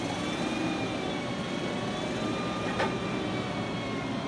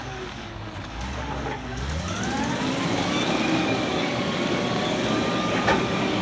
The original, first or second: first